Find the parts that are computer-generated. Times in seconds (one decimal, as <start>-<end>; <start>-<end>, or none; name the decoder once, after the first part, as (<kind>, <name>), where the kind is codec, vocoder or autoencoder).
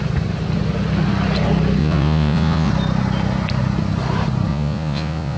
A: 1.8-2.7 (vocoder, Vocos); 4.5-5.4